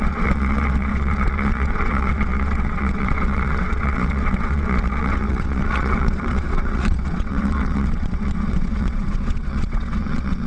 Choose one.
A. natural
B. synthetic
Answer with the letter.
B